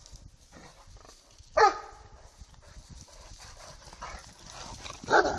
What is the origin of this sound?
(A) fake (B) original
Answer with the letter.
B